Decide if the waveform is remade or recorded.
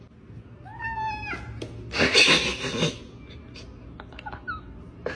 recorded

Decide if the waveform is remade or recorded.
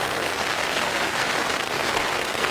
remade